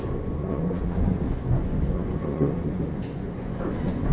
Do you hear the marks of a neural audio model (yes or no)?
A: yes